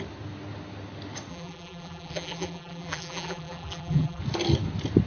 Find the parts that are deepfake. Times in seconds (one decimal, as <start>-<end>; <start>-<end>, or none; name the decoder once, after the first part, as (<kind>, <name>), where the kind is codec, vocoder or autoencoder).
1.3-4.2 (vocoder, BigVGAN v2)